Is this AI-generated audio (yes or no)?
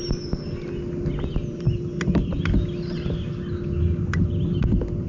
no